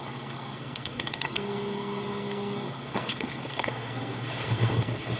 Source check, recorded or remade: remade